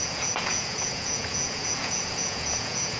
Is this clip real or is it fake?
fake